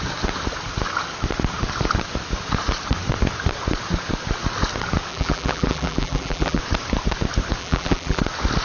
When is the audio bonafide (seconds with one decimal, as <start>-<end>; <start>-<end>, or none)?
0.0-5.1; 6.6-7.6; 8.2-8.6